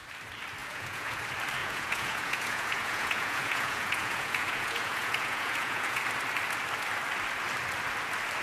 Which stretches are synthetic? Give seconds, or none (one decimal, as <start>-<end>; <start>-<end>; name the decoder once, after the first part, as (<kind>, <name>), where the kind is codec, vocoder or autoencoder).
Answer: 0.6-1.2 (vocoder, Vocos); 1.6-6.0

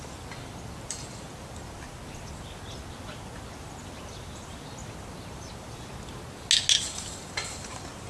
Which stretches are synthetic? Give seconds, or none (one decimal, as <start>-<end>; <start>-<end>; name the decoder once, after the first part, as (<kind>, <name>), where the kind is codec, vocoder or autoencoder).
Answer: none

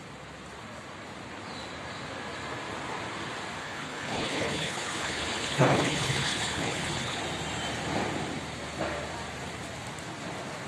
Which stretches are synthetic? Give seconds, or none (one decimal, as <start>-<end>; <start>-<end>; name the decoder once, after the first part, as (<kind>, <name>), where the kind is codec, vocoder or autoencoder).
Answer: 3.6-7.2 (codec, HILCodec)

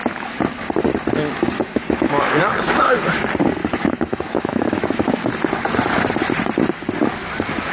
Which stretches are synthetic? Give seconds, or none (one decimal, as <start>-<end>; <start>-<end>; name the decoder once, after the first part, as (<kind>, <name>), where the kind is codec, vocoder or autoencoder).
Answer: 1.7-2.4 (autoencoder, DAC-VAE); 3.6-5.1

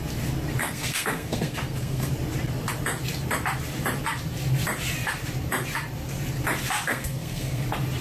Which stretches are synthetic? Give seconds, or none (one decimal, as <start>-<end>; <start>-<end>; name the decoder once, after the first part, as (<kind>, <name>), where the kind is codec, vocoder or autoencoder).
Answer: 0.6-2.1 (codec, SNAC); 6.9-7.6